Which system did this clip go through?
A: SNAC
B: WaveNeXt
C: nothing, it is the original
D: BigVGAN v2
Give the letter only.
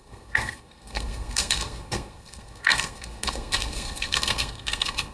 A